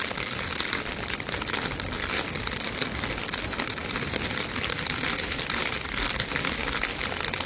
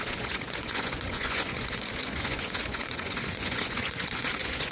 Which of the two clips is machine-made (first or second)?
second